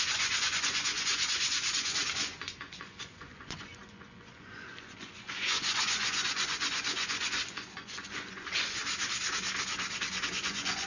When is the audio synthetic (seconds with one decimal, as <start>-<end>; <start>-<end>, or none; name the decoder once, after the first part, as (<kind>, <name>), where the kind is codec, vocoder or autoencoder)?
0.0-8.8 (vocoder, Vocos); 10.3-10.9